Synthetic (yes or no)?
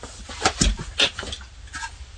no